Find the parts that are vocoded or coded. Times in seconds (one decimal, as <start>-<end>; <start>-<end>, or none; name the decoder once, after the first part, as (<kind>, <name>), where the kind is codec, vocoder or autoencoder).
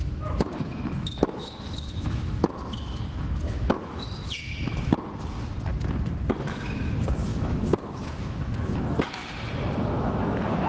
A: 0.0-4.9 (autoencoder, DAC-VAE); 6.4-9.2; 9.8-10.7